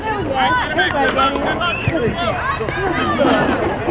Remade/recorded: recorded